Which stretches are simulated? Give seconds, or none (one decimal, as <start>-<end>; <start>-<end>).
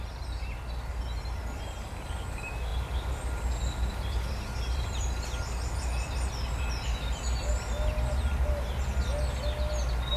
2.7-6.6